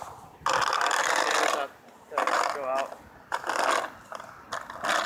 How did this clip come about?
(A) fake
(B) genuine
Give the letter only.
B